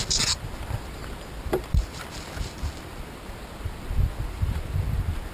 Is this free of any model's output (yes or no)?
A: no